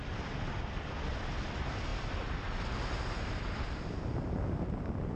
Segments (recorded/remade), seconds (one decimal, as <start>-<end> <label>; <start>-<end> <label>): 0.0-5.2 recorded